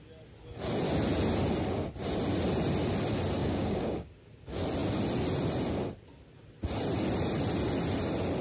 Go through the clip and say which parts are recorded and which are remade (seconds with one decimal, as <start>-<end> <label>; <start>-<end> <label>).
0.0-3.4 recorded; 3.4-4.1 remade; 4.1-8.4 recorded